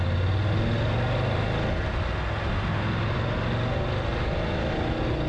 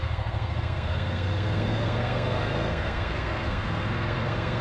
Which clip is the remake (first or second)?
second